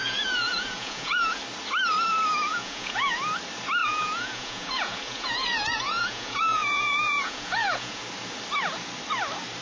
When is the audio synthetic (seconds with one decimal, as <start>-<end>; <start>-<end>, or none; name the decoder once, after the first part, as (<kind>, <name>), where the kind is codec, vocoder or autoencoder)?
0.0-1.4 (vocoder, Vocos); 2.5-3.2; 3.8-8.0